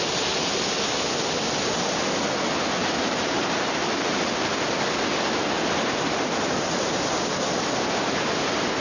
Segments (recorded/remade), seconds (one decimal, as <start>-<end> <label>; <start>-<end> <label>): 0.0-2.8 recorded; 2.8-4.2 remade; 4.2-8.8 recorded